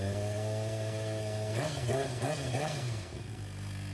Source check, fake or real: fake